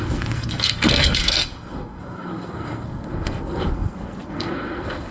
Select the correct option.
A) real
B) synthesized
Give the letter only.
B